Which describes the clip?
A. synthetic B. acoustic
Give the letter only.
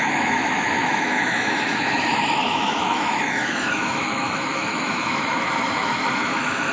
A